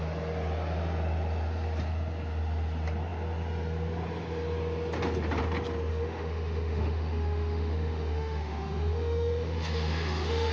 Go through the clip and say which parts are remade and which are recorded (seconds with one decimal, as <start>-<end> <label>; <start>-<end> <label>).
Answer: 0.0-5.9 recorded; 5.9-10.5 remade

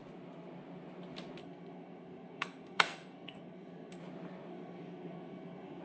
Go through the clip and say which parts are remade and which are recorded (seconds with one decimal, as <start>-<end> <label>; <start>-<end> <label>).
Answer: 0.0-1.4 recorded; 1.4-4.0 remade; 4.0-4.5 recorded; 4.5-5.8 remade

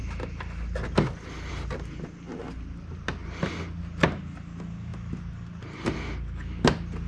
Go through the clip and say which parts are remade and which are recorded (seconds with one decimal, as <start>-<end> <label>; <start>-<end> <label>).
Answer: 0.0-7.1 recorded